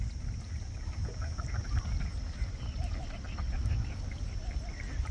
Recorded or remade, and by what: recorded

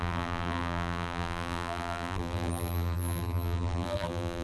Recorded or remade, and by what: remade, vocoder, BigVGAN v2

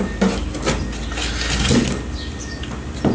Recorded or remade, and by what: recorded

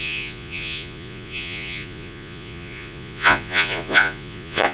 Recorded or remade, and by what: remade, vocoder, Vocos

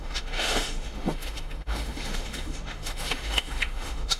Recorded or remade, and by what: remade, autoencoder, DAC-VAE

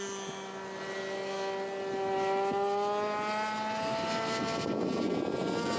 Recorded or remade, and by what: recorded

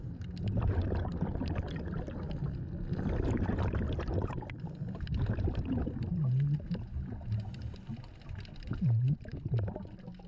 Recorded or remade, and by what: recorded